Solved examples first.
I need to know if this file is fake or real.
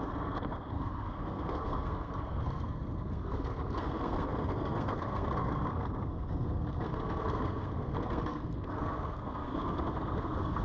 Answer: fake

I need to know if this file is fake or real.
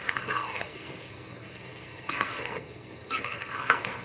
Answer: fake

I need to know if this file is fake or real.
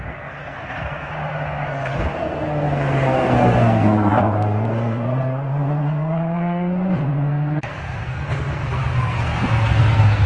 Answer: fake